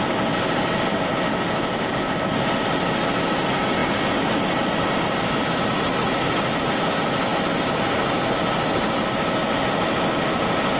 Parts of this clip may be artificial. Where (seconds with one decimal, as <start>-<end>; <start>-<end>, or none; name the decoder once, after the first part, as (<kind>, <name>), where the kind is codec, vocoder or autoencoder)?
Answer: none